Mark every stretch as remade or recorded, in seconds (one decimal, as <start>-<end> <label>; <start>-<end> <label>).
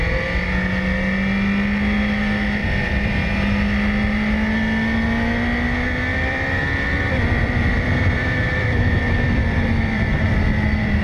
0.0-2.6 recorded; 2.6-3.1 remade; 3.1-6.1 recorded; 6.1-11.0 remade